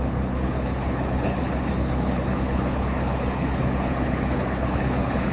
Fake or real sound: fake